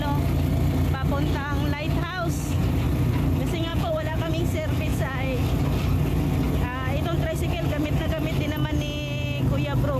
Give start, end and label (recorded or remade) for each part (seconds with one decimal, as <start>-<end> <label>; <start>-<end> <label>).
0.0-3.7 recorded; 3.7-4.3 remade; 4.3-4.9 recorded; 4.9-5.4 remade; 5.4-10.0 recorded